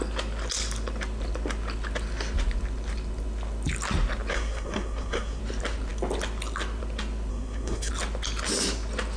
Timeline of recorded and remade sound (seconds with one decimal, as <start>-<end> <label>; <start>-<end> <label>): 0.0-4.3 recorded; 4.3-5.4 remade; 5.4-7.3 recorded; 7.3-7.9 remade; 7.9-9.2 recorded